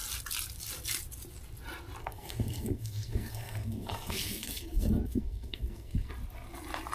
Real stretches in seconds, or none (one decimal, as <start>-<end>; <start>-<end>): 0.0-2.0; 6.1-6.9